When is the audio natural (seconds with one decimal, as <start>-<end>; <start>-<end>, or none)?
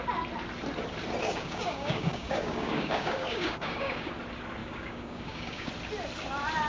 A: 0.0-1.2; 4.1-4.6; 5.7-6.7